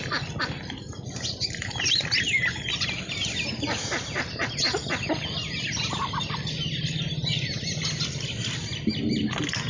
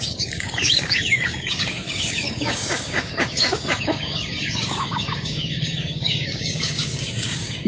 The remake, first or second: second